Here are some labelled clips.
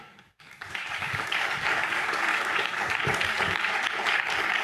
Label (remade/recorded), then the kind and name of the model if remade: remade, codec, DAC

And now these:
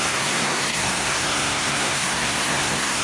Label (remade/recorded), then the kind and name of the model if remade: remade, codec, SNAC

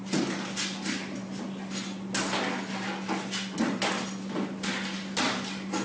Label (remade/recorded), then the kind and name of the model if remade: recorded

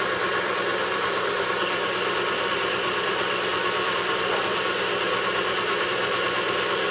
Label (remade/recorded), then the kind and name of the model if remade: recorded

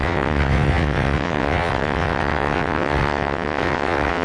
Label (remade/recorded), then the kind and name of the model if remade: remade, vocoder, WaveNeXt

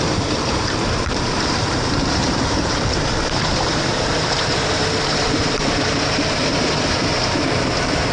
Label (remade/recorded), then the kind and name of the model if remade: remade, vocoder, BigVGAN v2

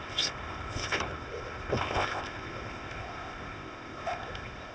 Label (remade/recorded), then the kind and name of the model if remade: remade, codec, ZipCodec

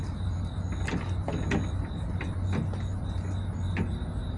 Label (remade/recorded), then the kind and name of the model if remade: recorded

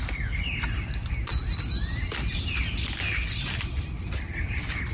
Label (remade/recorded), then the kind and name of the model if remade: recorded